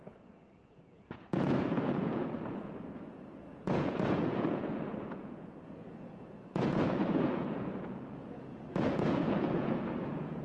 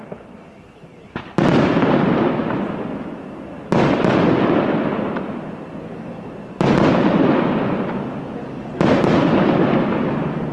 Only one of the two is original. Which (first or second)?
second